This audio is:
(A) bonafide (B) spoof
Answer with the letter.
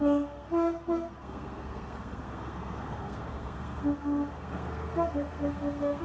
B